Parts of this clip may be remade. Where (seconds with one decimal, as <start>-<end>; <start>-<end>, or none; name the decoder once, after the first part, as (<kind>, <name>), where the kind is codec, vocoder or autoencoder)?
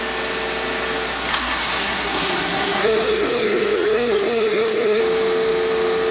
1.3-5.0 (codec, SNAC)